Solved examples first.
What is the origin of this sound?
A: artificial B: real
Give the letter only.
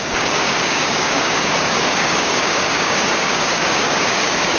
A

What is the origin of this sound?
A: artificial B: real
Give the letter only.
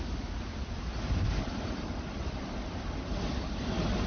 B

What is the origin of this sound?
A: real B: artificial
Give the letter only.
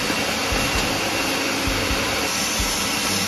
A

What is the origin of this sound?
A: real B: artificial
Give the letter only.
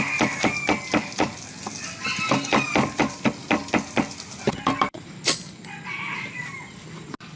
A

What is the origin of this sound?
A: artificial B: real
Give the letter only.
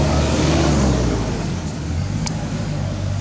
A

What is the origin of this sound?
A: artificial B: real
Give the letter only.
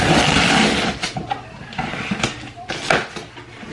B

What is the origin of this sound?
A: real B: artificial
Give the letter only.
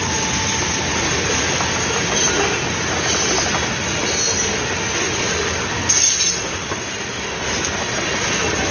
A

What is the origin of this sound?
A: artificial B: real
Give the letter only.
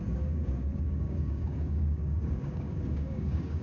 A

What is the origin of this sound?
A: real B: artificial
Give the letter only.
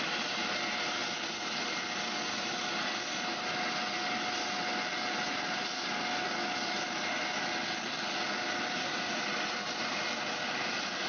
A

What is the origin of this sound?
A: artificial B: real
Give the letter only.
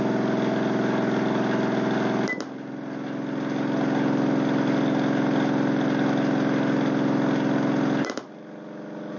B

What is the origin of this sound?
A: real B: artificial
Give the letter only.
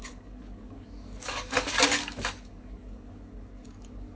B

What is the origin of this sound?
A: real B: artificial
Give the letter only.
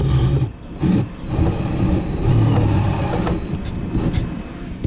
A